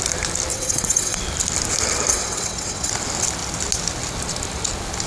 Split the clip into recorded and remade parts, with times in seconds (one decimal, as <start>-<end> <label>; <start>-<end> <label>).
0.0-0.5 recorded; 0.5-1.2 remade; 1.2-2.1 recorded; 2.1-2.9 remade; 2.9-5.1 recorded